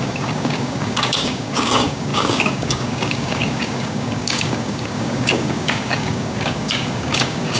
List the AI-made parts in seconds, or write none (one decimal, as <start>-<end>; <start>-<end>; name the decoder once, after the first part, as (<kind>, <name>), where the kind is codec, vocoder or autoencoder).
0.0-7.6 (codec, DAC)